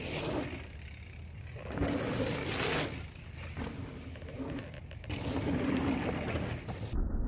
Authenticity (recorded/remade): recorded